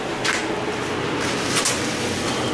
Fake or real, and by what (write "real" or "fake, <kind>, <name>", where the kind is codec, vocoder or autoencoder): real